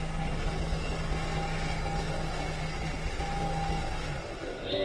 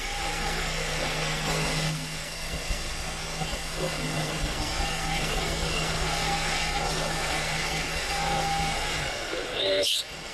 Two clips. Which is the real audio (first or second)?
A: first